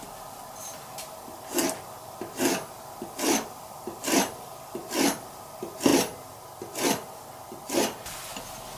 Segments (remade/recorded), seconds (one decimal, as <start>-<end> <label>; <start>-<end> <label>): 0.0-8.8 recorded

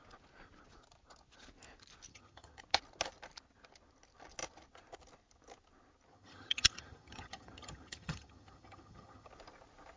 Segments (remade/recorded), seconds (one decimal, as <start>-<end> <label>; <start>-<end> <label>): 0.0-2.1 recorded; 2.1-2.6 remade; 2.6-6.1 recorded; 6.1-9.3 remade; 9.3-10.0 recorded

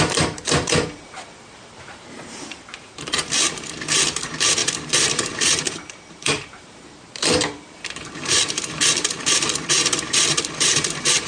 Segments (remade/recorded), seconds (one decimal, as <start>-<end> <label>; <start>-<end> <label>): 0.0-11.3 remade

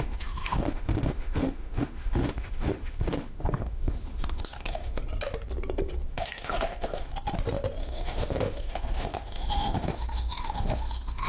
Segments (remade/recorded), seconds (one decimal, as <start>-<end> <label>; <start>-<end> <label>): 0.0-5.0 remade; 5.0-6.1 recorded; 6.1-7.1 remade; 7.1-7.8 recorded; 7.8-11.3 remade

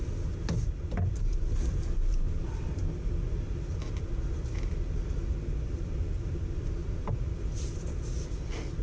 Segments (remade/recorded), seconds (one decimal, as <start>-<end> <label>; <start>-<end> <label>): 0.0-8.8 recorded

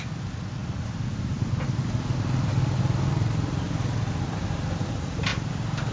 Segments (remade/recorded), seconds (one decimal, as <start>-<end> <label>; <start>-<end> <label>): 0.0-5.9 recorded